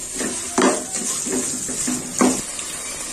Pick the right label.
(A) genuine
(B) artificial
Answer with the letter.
A